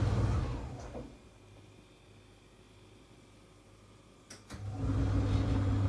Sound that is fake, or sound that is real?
real